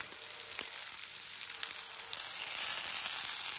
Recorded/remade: recorded